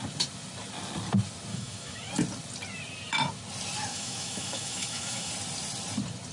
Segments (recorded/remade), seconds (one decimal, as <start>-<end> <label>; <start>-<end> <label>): 0.0-1.5 recorded; 1.5-2.1 remade; 2.1-3.9 recorded; 3.9-5.3 remade; 5.3-6.3 recorded